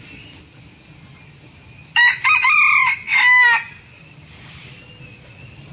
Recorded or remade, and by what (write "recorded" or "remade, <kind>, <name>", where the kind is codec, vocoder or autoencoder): recorded